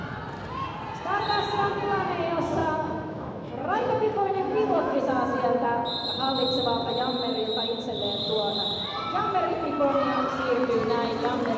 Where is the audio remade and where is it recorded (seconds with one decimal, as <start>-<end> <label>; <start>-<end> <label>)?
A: 0.0-2.6 recorded; 2.6-5.0 remade; 5.0-11.6 recorded